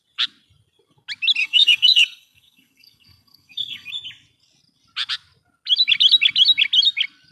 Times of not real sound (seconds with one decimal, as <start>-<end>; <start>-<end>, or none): 1.4-3.9